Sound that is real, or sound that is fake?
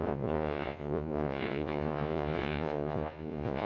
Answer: fake